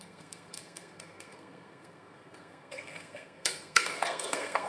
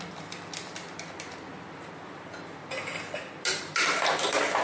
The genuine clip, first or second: second